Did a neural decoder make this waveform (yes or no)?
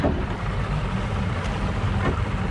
no